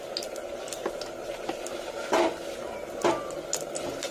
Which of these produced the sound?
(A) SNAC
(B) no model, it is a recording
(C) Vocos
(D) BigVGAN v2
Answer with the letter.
B